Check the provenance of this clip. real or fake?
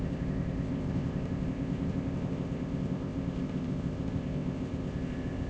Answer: fake